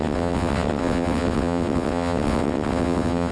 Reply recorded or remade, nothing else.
remade